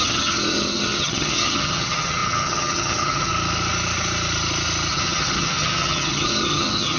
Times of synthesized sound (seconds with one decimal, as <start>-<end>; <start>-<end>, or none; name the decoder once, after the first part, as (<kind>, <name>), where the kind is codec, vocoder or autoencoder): 0.0-3.3 (vocoder, HiFi-GAN); 4.9-7.0